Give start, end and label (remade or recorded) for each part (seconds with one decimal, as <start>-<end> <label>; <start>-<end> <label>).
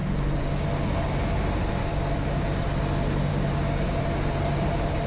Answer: 0.0-0.6 remade; 0.6-1.8 recorded; 1.8-2.4 remade; 2.4-3.3 recorded; 3.3-4.0 remade; 4.0-5.1 recorded